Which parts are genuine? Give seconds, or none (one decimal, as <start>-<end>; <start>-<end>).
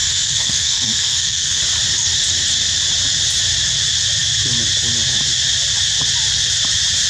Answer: 1.6-7.1